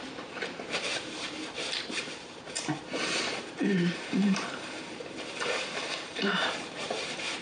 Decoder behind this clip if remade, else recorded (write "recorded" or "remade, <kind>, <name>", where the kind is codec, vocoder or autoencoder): remade, vocoder, BigVGAN v2